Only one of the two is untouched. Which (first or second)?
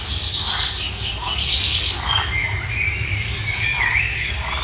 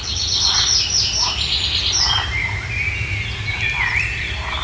second